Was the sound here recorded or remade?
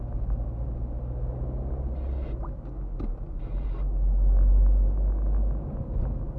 recorded